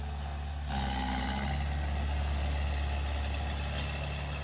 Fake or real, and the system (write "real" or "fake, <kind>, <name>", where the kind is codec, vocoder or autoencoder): real